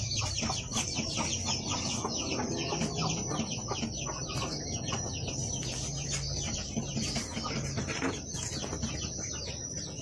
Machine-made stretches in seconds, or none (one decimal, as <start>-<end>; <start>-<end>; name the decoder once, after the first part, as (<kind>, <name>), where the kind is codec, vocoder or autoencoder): none